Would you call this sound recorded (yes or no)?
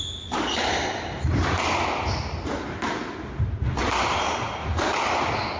yes